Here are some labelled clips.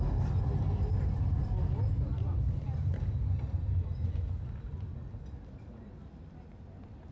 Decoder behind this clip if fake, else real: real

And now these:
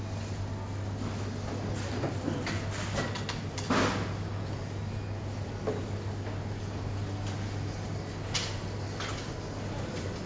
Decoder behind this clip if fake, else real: real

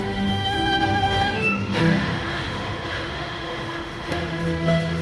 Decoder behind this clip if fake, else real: fake, autoencoder, DAC-VAE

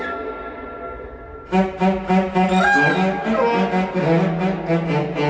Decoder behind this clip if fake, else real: real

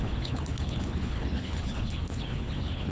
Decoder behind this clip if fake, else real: fake, codec, HILCodec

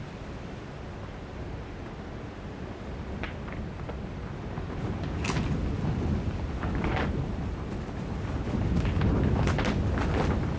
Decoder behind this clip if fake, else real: real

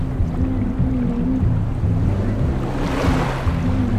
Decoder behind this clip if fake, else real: real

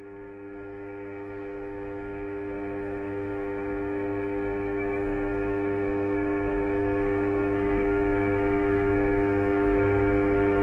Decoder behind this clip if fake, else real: fake, codec, SNAC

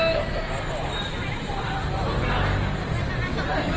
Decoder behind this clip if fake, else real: real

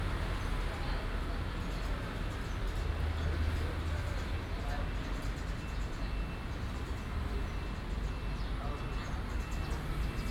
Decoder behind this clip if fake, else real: real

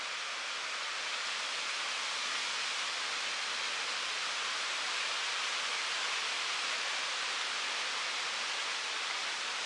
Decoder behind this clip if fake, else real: real